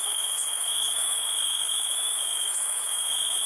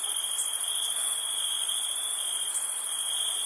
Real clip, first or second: second